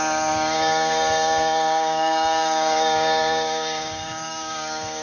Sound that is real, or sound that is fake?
fake